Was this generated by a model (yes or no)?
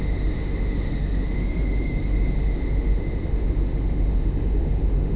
yes